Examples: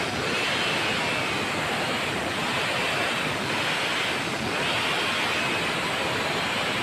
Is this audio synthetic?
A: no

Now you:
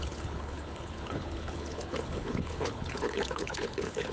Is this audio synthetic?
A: yes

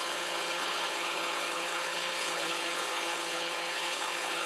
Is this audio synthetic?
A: yes